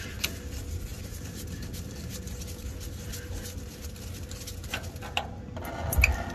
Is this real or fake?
real